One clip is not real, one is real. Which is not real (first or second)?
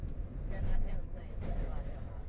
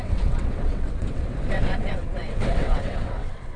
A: second